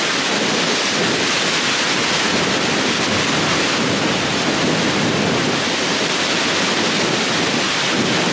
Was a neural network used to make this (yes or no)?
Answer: no